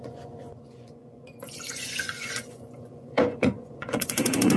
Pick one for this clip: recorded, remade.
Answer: remade